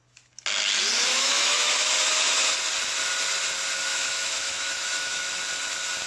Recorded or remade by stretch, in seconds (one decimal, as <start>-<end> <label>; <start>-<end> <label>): 0.0-1.1 recorded; 1.1-1.8 remade; 1.8-3.9 recorded; 3.9-5.3 remade; 5.3-6.1 recorded